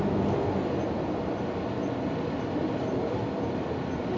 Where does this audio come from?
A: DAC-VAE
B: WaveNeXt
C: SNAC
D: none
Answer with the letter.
D